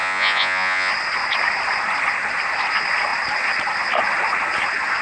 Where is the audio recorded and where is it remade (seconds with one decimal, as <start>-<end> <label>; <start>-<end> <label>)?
0.0-0.9 remade; 0.9-5.0 recorded